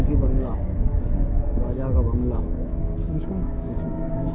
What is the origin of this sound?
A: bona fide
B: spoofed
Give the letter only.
B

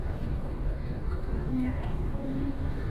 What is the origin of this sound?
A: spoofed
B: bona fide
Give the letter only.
A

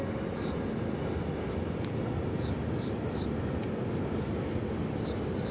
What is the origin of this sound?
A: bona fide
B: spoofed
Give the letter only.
A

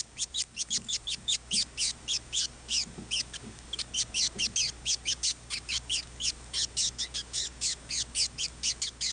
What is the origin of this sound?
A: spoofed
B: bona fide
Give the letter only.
A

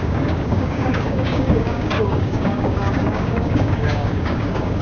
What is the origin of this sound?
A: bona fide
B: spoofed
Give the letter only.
B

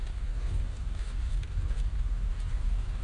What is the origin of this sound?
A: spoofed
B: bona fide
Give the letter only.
A